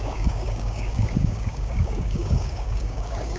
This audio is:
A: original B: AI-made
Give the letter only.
B